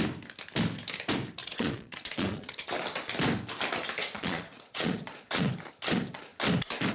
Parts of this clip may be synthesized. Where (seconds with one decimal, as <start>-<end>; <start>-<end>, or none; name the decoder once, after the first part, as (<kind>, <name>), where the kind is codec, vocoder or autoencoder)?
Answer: 1.4-2.6 (vocoder, Vocos); 4.0-5.5